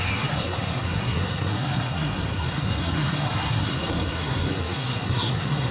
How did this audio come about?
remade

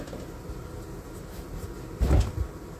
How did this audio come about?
recorded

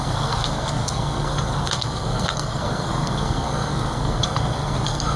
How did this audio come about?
remade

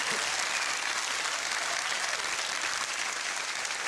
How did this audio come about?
recorded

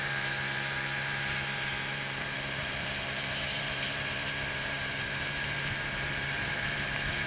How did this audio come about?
remade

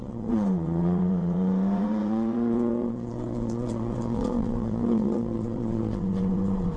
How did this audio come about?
remade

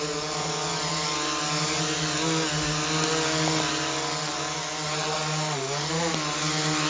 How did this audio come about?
recorded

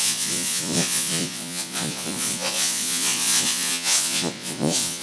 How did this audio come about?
remade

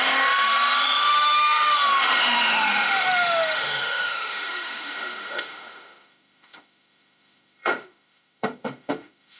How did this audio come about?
remade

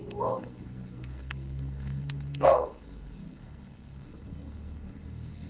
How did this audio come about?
remade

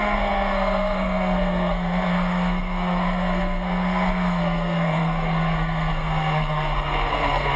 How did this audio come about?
remade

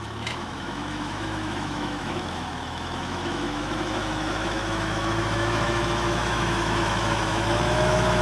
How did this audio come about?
remade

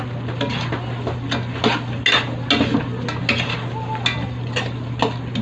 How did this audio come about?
recorded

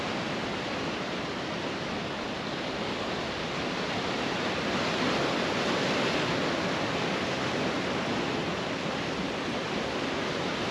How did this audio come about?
recorded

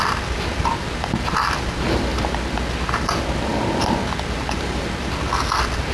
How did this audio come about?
recorded